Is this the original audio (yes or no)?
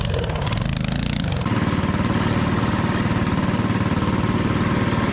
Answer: yes